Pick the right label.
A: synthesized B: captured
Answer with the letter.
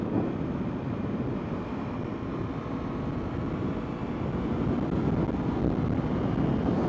B